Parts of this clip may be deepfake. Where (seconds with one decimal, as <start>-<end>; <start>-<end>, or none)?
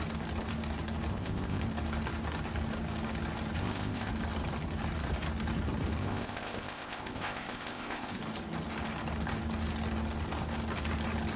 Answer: 1.1-1.6; 3.6-4.1; 6.0-8.2